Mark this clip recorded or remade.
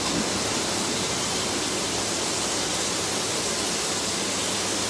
recorded